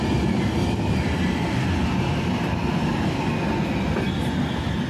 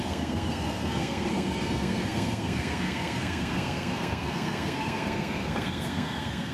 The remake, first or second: second